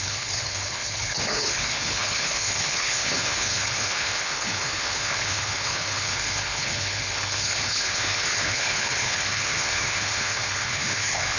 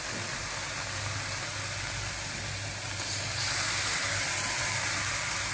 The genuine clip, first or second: second